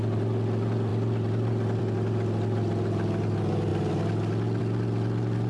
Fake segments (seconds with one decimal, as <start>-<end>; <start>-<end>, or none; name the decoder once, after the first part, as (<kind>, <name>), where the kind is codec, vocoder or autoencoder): none